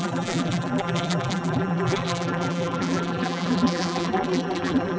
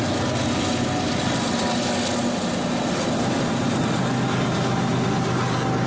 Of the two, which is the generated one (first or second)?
first